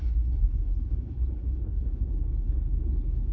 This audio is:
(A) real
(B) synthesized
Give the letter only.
B